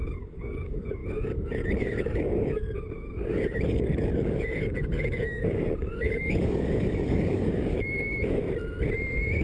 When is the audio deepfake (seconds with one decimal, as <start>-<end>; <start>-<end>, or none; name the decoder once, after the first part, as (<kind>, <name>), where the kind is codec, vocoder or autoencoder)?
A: 0.0-8.4 (codec, DAC)